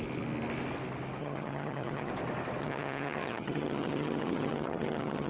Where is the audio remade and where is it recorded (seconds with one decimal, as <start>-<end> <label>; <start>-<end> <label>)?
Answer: 0.0-1.2 recorded; 1.2-2.1 remade; 2.1-2.6 recorded; 2.6-5.3 remade